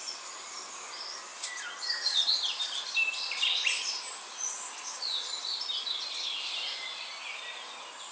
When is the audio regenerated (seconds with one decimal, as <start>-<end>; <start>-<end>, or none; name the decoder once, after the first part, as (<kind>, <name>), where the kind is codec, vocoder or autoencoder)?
none